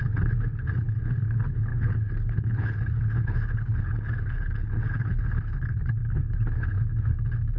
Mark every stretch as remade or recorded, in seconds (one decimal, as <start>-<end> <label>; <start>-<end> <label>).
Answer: 0.0-7.6 remade